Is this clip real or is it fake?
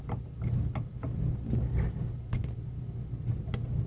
real